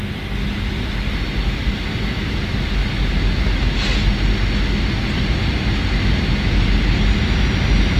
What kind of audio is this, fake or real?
real